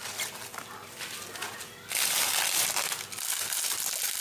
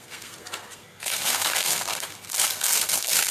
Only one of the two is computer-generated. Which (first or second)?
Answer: second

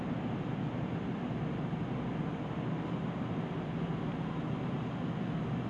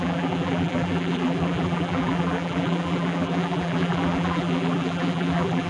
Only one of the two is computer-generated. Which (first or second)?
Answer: second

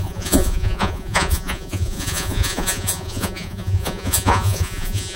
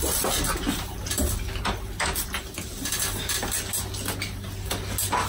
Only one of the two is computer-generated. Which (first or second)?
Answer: first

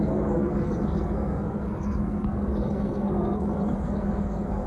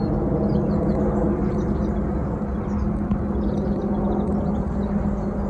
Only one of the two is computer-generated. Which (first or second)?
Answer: first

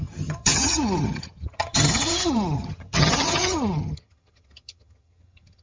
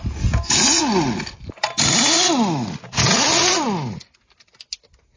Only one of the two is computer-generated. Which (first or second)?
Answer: first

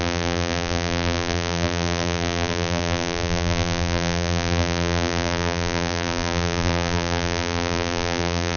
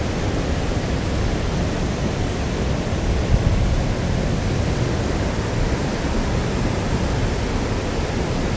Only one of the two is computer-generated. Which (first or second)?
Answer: first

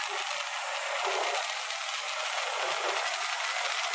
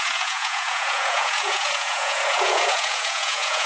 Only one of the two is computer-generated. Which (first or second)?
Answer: second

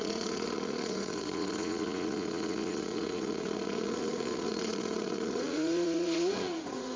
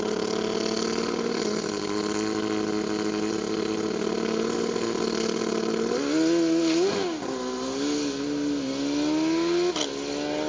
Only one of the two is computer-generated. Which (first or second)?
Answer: first